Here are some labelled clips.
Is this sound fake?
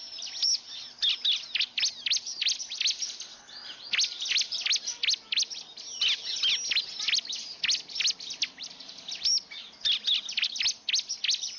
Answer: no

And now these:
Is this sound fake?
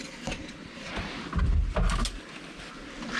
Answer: no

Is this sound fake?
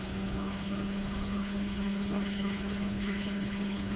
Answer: yes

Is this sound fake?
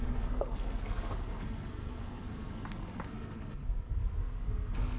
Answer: yes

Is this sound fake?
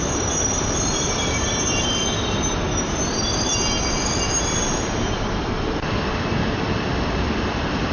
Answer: yes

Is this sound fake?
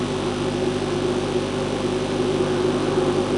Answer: no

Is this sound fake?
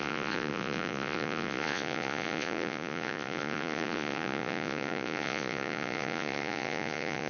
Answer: yes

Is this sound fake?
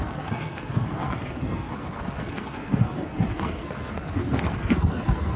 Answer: yes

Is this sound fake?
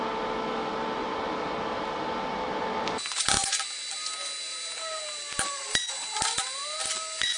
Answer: no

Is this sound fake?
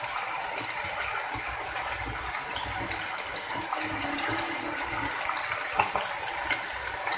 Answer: no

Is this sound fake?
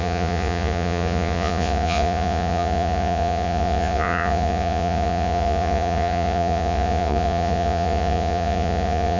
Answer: yes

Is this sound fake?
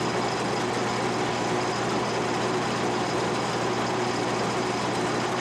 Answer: no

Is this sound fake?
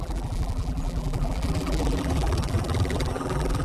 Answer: yes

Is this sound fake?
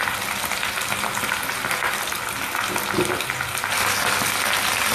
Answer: no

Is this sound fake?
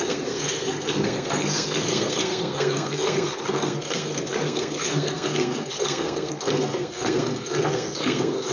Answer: yes